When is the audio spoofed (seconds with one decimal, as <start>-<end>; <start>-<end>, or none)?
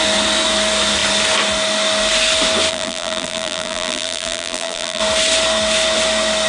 2.7-5.0